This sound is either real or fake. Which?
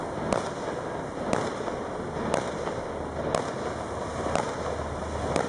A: real